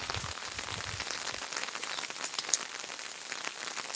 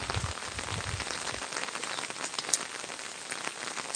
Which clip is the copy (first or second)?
first